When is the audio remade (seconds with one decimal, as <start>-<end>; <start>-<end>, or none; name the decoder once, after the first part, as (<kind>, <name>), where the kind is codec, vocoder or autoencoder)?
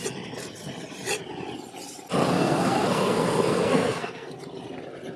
2.2-4.4 (codec, SNAC)